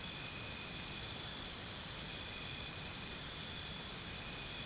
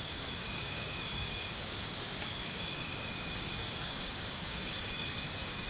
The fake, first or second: second